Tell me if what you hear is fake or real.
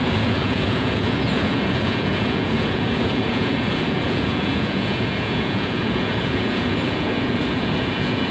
fake